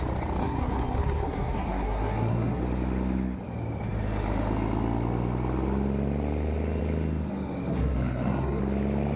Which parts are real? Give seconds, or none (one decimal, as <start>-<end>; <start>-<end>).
0.0-0.4; 2.6-7.7; 8.6-9.2